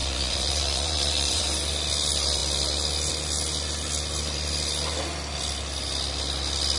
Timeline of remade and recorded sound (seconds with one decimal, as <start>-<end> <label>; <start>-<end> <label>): 0.0-1.4 remade; 1.4-6.8 recorded